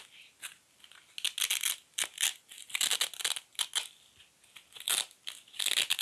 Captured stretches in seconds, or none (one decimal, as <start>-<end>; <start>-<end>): 0.0-6.0